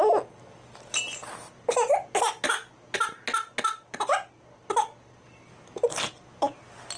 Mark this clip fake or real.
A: real